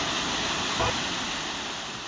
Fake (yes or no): no